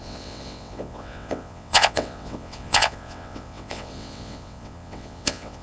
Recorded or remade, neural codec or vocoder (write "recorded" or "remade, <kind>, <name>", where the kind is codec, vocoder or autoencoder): remade, vocoder, WaveNeXt